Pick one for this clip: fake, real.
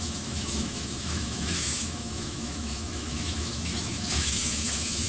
fake